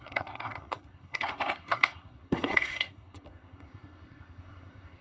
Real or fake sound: fake